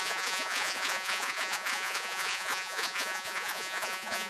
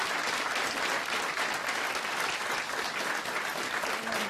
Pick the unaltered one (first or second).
second